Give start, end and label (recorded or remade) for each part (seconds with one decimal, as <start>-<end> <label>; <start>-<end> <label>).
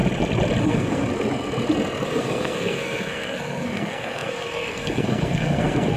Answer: 0.0-0.6 recorded; 0.6-1.0 remade; 1.0-2.2 recorded; 2.2-6.0 remade